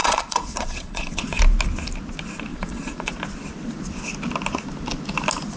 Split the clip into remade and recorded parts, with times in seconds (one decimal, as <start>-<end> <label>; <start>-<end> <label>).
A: 0.0-1.4 remade; 1.4-2.5 recorded; 2.5-3.1 remade; 3.1-5.6 recorded